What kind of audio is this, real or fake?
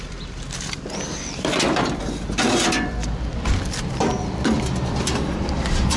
fake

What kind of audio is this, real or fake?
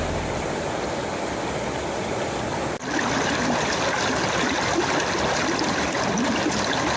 real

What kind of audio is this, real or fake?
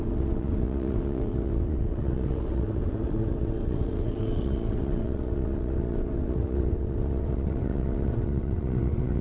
fake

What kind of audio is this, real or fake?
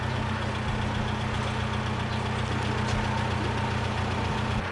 real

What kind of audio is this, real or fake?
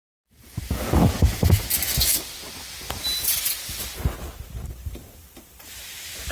real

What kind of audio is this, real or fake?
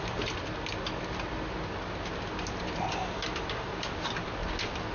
real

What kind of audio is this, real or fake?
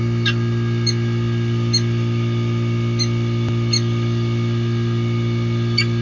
real